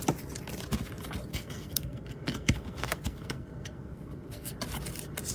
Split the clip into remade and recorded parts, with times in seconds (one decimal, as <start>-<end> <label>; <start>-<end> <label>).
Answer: 0.0-1.3 recorded; 1.3-4.5 remade; 4.5-5.3 recorded